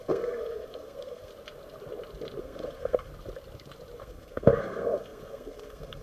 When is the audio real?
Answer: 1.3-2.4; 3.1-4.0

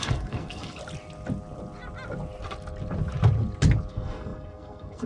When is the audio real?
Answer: 0.8-3.9